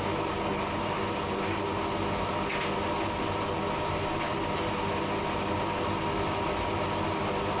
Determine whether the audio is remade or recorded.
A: recorded